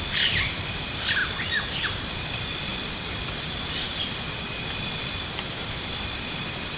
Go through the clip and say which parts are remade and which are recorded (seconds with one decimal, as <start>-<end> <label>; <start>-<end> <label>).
0.0-2.7 remade; 2.7-3.5 recorded; 3.5-6.8 remade